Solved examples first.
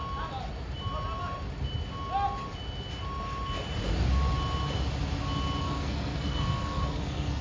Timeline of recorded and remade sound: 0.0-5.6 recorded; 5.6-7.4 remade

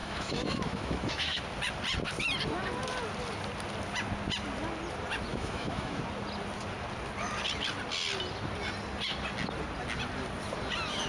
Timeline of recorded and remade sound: 0.0-1.4 remade; 1.4-5.3 recorded; 5.3-6.0 remade; 6.0-11.1 recorded

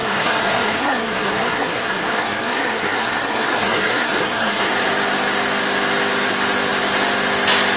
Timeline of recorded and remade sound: 0.0-4.7 remade; 4.7-7.8 recorded

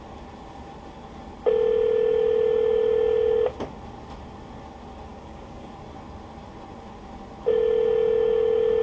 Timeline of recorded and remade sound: 0.0-5.1 recorded; 5.1-5.7 remade; 5.7-8.8 recorded

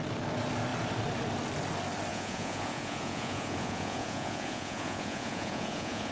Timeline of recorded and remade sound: 0.0-2.1 recorded; 2.1-6.1 remade

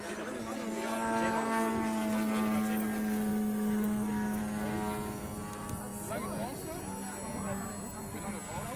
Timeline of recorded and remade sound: 0.0-3.3 recorded; 3.3-4.4 remade; 4.4-8.8 recorded

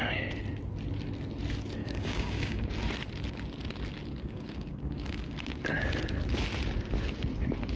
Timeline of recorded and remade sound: 0.0-1.8 recorded; 1.8-2.7 remade; 2.7-4.2 recorded; 4.2-5.5 remade; 5.5-7.8 recorded